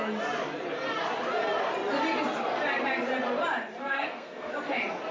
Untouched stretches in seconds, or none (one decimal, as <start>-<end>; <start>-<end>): 0.0-3.8; 4.5-5.1